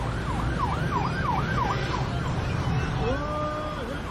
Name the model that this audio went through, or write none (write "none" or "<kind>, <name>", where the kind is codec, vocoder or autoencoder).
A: none